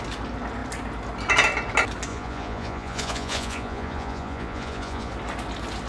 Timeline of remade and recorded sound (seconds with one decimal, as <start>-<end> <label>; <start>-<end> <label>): 0.0-2.1 recorded; 2.1-5.1 remade; 5.1-5.9 recorded